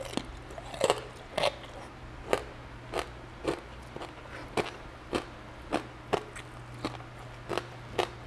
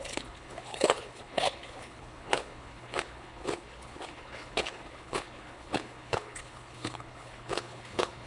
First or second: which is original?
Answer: first